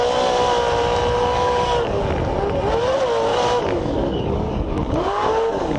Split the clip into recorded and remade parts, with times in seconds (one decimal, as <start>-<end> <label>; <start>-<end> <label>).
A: 0.0-1.2 recorded; 1.2-2.0 remade; 2.0-3.3 recorded; 3.3-5.8 remade